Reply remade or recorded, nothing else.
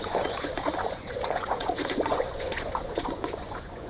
remade